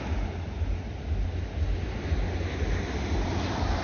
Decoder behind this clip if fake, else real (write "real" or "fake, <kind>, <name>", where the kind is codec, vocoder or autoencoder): real